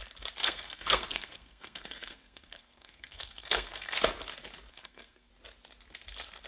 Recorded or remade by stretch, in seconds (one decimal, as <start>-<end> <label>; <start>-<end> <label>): 0.0-0.4 recorded; 0.4-4.0 remade; 4.0-4.7 recorded; 4.7-5.3 remade; 5.3-6.5 recorded